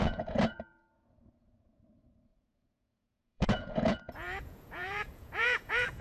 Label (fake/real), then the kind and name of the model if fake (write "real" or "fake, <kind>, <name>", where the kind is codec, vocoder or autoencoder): fake, vocoder, Vocos